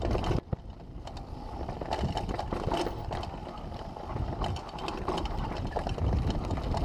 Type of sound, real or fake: real